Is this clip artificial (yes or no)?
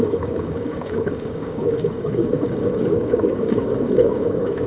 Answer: yes